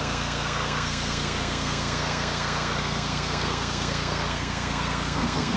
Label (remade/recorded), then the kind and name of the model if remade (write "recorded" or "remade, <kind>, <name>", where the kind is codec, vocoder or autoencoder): remade, codec, SNAC